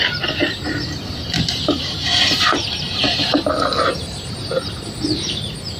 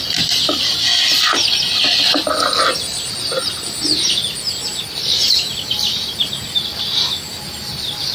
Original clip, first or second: second